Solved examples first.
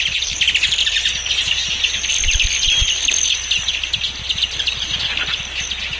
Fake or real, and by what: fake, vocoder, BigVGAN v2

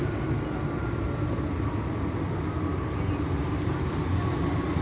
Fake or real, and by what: real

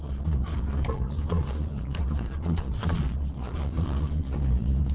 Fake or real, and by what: fake, vocoder, Vocos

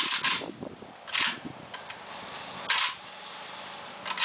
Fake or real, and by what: real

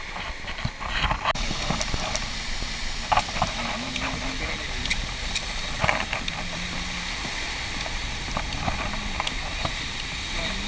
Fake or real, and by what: real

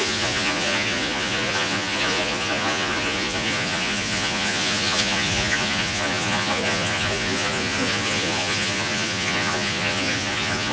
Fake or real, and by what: fake, vocoder, Vocos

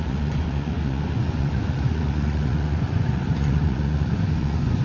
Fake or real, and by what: fake, vocoder, Vocos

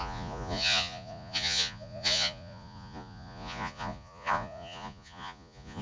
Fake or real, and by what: fake, vocoder, Vocos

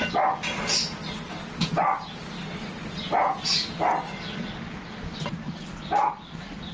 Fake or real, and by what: real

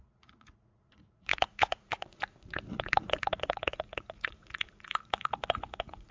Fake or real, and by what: fake, vocoder, Vocos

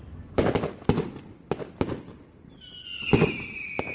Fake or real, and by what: real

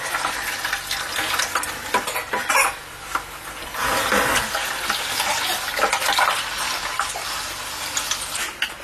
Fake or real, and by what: real